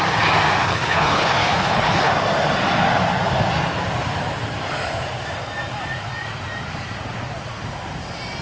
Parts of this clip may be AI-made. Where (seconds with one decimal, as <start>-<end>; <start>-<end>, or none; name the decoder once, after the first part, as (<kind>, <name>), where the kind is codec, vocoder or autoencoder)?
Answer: 0.6-2.1 (codec, HILCodec)